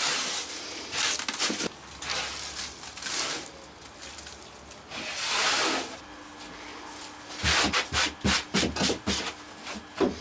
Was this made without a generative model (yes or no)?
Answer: yes